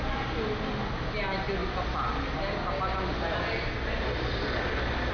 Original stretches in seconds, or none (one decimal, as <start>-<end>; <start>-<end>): 0.0-5.1